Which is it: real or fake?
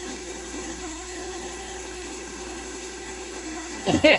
fake